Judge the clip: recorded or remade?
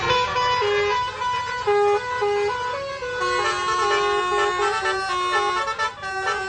recorded